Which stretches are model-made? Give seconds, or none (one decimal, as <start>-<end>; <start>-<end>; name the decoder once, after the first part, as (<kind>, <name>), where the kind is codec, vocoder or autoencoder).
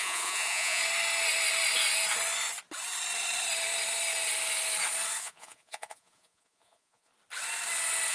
0.0-0.8 (vocoder, Vocos); 5.2-7.1